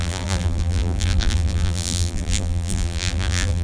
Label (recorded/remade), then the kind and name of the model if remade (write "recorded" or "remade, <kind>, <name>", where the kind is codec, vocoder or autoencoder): remade, vocoder, BigVGAN v2